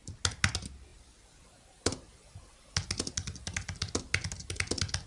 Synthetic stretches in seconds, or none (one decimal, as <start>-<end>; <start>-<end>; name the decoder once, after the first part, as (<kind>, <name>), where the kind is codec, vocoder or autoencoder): none